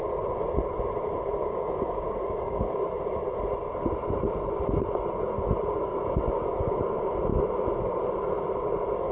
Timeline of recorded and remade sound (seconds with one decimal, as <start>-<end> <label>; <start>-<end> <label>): 0.0-1.4 recorded; 1.4-3.0 remade; 3.0-5.9 recorded; 5.9-6.8 remade; 6.8-9.1 recorded